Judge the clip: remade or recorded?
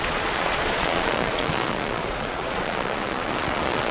remade